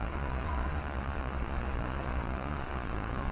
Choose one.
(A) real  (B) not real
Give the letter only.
B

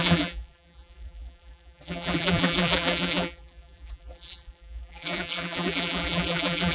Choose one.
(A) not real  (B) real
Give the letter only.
A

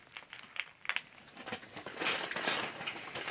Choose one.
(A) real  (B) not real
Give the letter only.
A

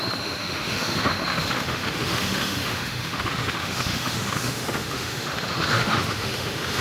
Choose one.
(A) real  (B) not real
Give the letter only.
B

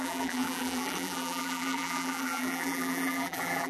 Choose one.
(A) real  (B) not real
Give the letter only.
B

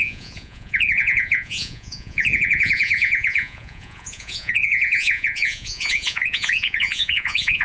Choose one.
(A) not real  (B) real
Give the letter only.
A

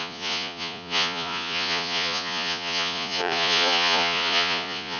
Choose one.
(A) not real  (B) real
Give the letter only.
A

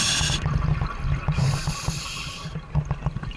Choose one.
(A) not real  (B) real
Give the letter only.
B